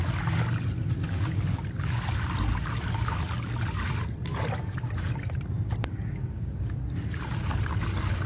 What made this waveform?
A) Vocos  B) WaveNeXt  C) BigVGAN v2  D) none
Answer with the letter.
D